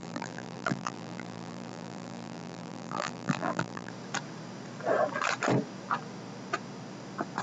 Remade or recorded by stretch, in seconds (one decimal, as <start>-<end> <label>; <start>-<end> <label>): 0.0-3.9 remade; 3.9-7.4 recorded